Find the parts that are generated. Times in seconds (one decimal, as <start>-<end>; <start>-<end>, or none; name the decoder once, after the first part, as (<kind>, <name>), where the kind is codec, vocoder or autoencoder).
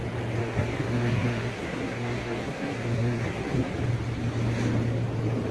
0.4-3.7 (codec, SNAC)